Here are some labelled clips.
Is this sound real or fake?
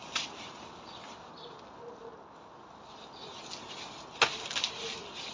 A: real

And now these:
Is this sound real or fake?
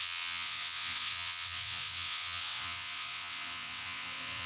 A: fake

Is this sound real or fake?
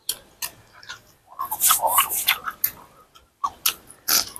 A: real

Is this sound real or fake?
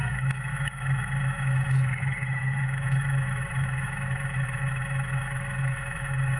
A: fake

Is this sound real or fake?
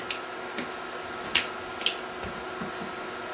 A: real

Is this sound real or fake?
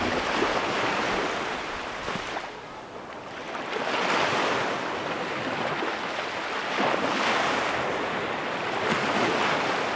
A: real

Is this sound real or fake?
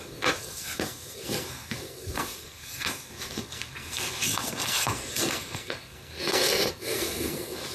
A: fake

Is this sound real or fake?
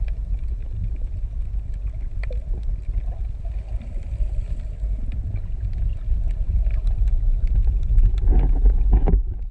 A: real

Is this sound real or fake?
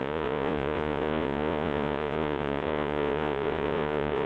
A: fake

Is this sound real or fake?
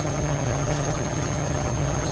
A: fake